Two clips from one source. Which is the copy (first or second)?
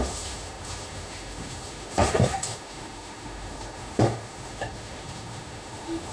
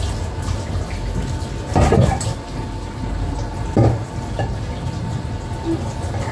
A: first